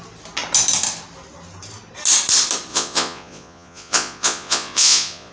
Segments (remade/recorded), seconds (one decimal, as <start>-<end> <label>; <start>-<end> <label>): 0.0-2.7 recorded; 2.7-5.3 remade